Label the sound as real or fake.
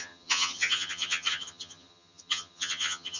fake